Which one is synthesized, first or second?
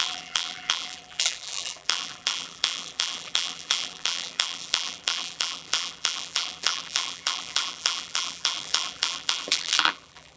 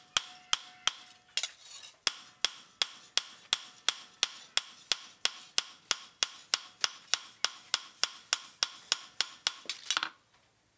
first